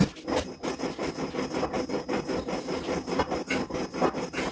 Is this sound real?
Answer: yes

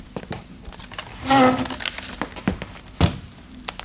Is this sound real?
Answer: yes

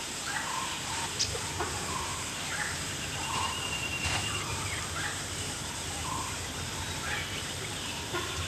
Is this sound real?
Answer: no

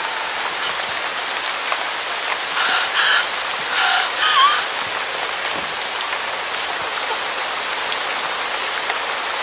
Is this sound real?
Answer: yes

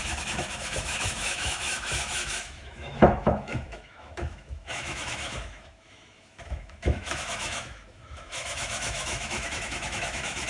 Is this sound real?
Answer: no